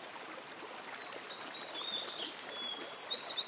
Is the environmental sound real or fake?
real